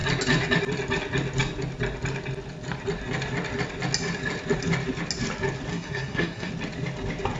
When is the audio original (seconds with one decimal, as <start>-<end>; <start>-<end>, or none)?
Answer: 0.0-5.7; 6.5-7.4

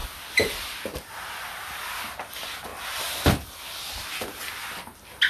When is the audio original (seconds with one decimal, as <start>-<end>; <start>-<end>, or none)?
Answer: 0.0-5.3

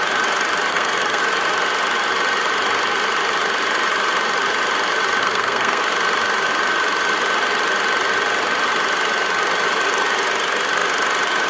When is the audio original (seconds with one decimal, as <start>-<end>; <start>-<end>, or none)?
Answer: 0.0-0.7; 1.2-5.2; 5.8-11.5

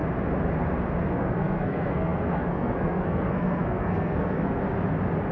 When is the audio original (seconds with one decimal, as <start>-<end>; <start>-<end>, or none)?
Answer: 0.0-1.0; 4.6-5.3